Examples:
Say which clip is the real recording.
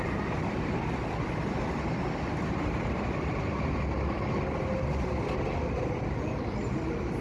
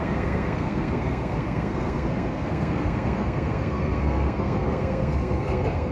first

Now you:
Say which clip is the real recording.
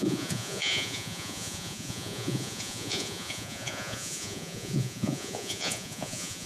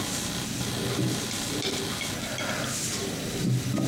second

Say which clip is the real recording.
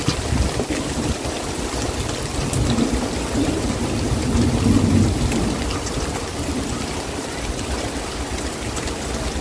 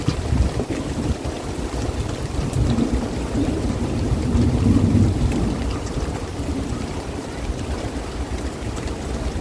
first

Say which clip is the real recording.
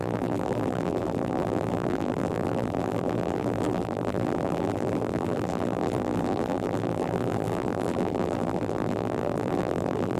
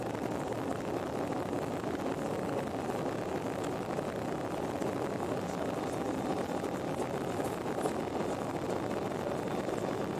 second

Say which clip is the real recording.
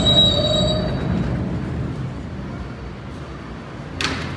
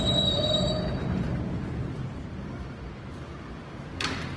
first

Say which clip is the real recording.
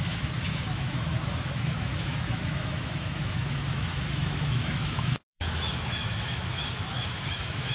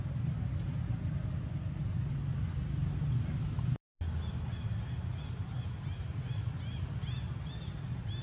second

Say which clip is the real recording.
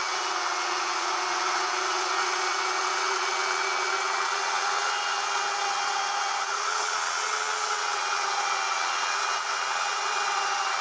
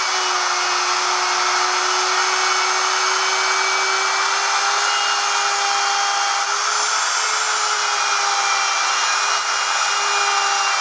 second